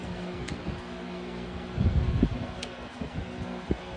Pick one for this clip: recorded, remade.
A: remade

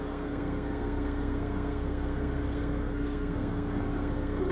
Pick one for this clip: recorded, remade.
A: remade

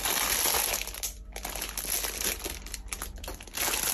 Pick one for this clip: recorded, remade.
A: recorded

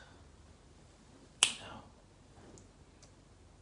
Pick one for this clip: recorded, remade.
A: recorded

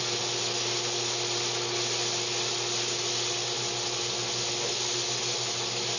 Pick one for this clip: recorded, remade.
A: recorded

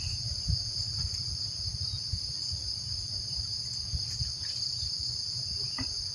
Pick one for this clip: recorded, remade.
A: recorded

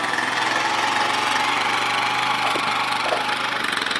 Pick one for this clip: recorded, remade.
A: recorded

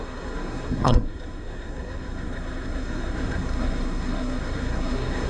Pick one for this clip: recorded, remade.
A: remade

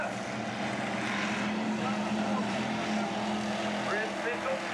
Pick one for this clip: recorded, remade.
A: recorded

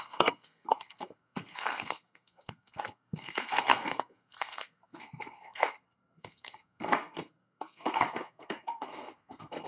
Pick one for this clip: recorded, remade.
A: remade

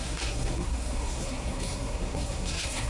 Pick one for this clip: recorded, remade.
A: remade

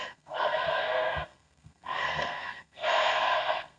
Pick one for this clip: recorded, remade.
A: remade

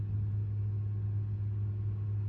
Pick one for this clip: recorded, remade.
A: recorded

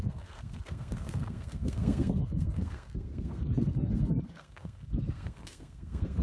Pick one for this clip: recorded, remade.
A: remade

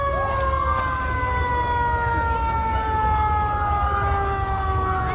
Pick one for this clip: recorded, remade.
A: recorded